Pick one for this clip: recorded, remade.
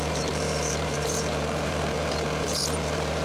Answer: remade